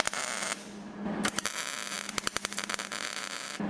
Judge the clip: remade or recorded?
recorded